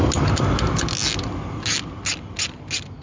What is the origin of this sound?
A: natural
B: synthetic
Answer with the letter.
A